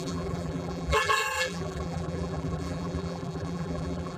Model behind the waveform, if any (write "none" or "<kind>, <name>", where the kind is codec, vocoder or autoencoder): vocoder, BigVGAN v2